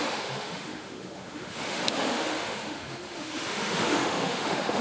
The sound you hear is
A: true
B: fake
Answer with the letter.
B